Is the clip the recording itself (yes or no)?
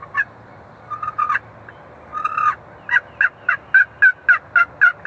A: yes